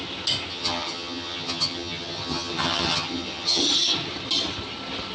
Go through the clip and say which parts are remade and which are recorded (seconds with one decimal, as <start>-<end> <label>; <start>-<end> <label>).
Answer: 0.0-0.5 recorded; 0.5-3.6 remade; 3.6-5.1 recorded